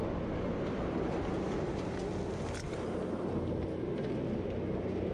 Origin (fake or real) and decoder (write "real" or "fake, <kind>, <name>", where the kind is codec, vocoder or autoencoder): real